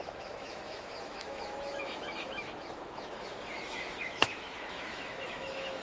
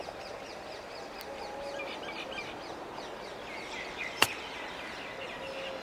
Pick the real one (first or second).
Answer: second